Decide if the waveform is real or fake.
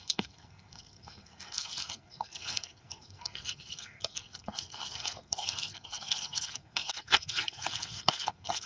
fake